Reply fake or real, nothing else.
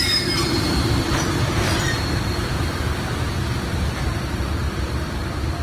fake